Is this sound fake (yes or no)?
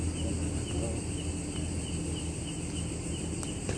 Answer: no